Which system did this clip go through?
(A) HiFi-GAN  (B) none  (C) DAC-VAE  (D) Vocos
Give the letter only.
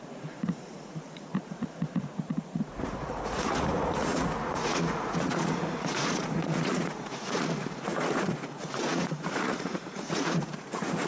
D